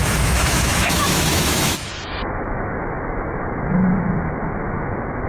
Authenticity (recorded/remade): remade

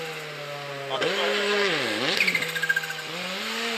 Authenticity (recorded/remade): recorded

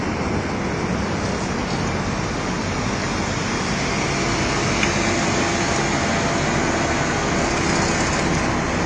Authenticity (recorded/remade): recorded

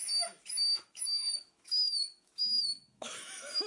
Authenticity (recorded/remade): remade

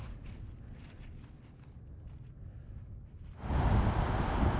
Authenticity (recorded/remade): recorded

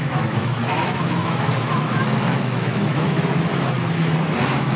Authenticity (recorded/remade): remade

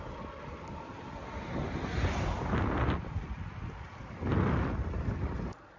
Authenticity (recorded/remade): recorded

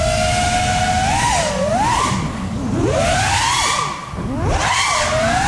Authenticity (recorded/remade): recorded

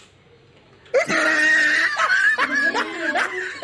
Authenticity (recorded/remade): recorded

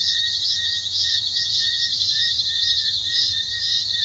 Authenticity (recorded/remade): remade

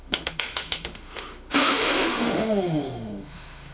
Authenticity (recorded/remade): remade